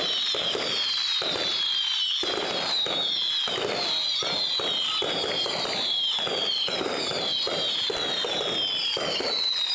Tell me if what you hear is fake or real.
real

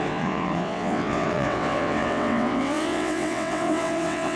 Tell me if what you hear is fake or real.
fake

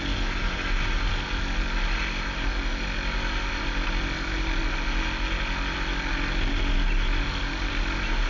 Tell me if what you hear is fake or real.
real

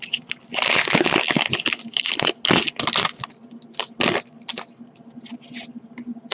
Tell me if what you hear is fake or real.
real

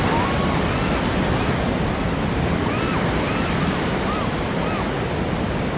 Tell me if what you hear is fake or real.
real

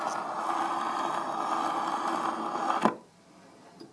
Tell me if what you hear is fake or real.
real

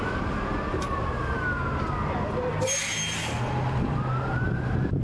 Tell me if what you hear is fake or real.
real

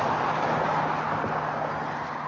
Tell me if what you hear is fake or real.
real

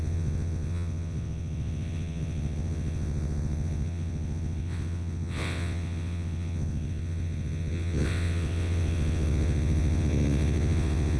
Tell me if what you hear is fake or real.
fake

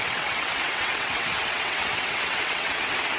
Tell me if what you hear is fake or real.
fake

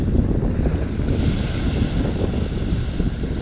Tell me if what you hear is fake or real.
real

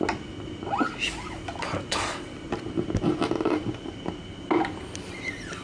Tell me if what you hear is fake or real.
real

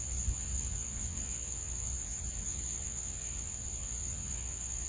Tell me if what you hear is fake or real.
fake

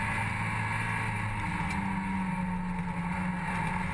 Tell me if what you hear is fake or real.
real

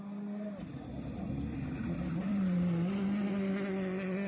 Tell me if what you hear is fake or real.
real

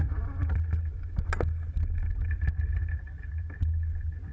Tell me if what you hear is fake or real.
real